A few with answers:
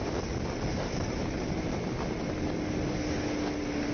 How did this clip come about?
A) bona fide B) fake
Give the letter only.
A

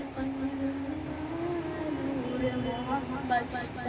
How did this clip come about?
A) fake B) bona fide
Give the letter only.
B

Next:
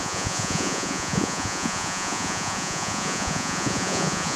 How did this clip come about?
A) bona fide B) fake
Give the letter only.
B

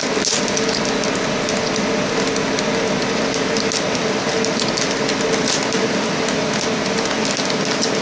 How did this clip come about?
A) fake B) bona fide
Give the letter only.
B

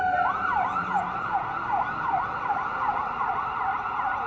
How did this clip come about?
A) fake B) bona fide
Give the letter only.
B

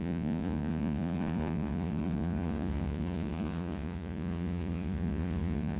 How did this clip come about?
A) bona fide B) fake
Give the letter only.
B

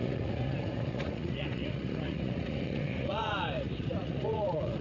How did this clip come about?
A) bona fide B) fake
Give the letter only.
B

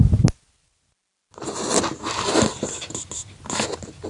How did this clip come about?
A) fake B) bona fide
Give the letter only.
B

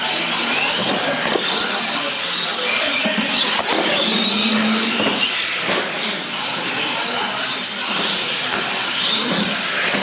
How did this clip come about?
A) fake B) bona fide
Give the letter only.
B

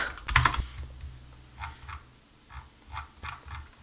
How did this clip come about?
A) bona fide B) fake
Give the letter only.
A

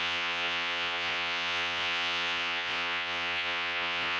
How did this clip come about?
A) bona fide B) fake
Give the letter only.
B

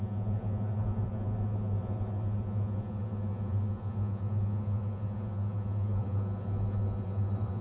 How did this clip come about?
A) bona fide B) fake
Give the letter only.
B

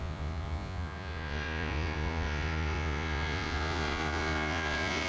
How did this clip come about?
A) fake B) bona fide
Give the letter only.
A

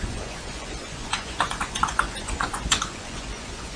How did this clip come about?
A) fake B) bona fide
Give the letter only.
A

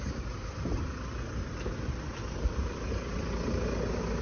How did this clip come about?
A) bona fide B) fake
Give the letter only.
A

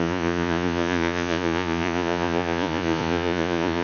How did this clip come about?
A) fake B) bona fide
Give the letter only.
A